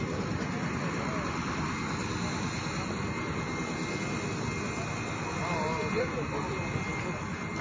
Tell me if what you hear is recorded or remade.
recorded